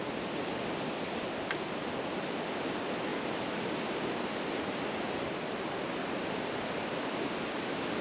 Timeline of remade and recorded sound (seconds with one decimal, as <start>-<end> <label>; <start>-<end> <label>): 0.0-8.0 recorded